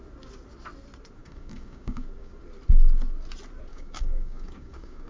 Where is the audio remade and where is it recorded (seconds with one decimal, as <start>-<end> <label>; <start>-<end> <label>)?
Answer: 0.0-1.2 recorded; 1.2-2.3 remade; 2.3-3.7 recorded; 3.7-5.1 remade